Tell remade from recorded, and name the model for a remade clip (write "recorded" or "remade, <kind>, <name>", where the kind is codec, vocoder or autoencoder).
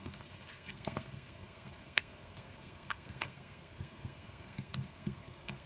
remade, codec, SNAC